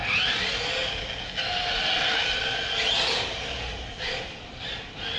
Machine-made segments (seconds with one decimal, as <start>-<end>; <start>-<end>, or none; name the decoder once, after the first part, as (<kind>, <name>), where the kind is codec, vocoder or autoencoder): none

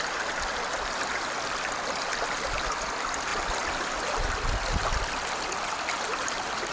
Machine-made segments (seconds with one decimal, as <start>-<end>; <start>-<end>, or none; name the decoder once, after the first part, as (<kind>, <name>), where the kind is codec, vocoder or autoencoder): none

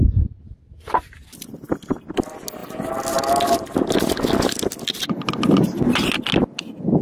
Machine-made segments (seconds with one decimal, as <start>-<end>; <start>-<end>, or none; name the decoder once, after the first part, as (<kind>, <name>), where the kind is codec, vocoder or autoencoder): none

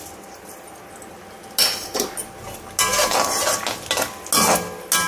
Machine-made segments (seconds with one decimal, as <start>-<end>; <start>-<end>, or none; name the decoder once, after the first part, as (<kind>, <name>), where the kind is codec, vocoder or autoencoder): none

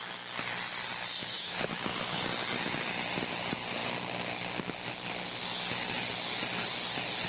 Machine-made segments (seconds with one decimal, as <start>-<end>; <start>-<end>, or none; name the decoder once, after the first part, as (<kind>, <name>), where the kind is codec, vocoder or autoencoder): 1.2-2.2 (autoencoder, DAC-VAE)

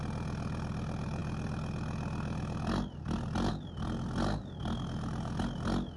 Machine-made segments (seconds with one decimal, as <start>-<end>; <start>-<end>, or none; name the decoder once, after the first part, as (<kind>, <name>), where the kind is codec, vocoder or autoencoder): none

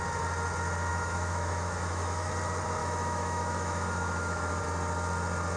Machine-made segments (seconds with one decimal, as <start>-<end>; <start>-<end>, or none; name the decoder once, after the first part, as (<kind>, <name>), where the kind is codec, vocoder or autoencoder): 0.9-2.3 (autoencoder, DAC-VAE); 2.8-4.6